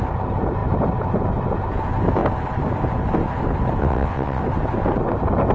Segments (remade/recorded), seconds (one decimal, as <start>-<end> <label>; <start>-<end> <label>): 0.0-3.8 recorded; 3.8-4.4 remade; 4.4-5.5 recorded